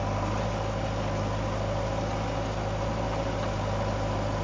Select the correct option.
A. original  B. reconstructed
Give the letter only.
A